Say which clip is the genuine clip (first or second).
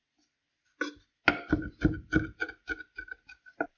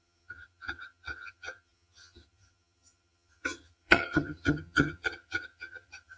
first